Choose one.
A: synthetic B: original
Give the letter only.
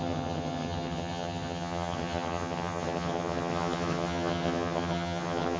A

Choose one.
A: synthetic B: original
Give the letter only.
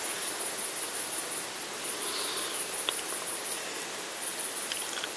B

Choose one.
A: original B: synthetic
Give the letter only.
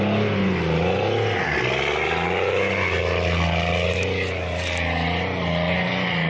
A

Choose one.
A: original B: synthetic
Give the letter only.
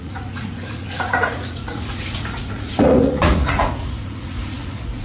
B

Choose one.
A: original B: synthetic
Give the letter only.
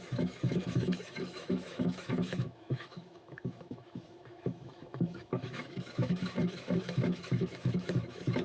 B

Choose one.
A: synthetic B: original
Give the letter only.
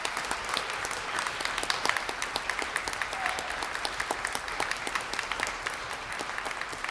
B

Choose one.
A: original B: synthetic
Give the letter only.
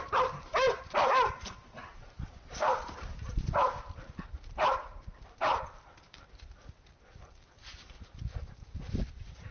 B